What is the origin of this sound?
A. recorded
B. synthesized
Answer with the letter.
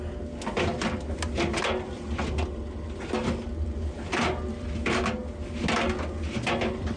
A